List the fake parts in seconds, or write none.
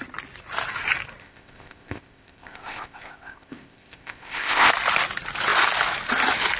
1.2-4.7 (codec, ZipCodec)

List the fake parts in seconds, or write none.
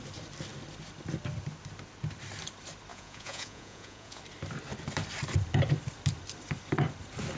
2.9-4.2 (vocoder, Vocos)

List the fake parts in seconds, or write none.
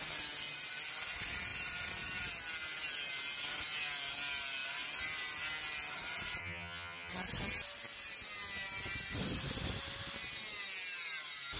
6.4-7.1 (vocoder, HiFi-GAN)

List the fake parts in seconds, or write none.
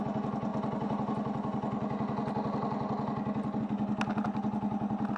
none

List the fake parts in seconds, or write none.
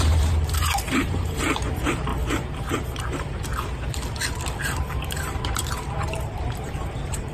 0.0-2.1 (vocoder, BigVGAN v2); 3.0-3.5; 4.8-7.3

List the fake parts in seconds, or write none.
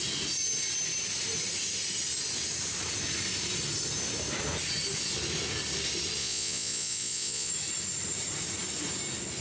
6.2-7.5 (vocoder, Vocos)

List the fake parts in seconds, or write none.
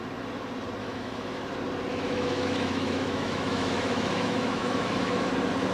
0.8-1.4 (autoencoder, DAC-VAE); 1.9-5.3